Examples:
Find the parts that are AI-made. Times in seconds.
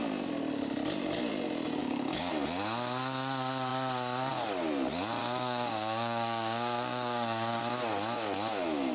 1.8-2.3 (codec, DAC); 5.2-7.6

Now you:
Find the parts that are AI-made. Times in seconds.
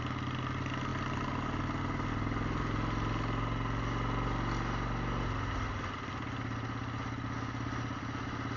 none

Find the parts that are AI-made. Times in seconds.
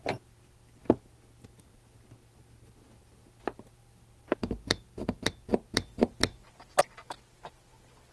none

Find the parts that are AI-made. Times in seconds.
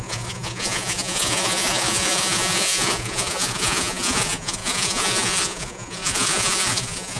0.0-7.2 (vocoder, Vocos)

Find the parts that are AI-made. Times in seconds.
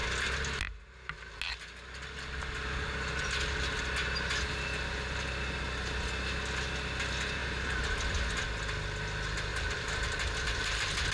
7.4-8.3 (vocoder, BigVGAN v2); 9.5-11.1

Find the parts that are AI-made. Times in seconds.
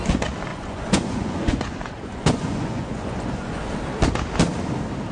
0.5-3.6 (vocoder, Vocos)